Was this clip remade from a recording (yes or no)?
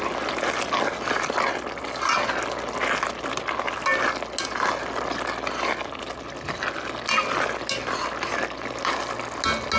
no